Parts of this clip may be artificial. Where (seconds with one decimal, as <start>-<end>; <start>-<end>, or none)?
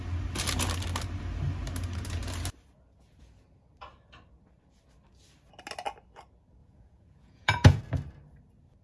6.6-7.8